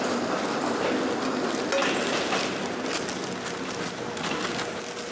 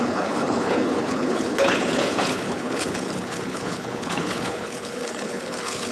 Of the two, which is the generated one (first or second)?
second